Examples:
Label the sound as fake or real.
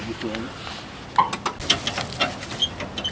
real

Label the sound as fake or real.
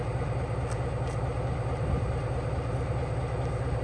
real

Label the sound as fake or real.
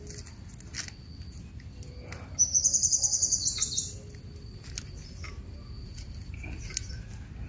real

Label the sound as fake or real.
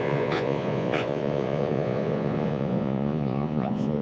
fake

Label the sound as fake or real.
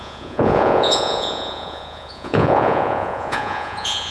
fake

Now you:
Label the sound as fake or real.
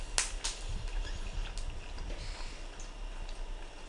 real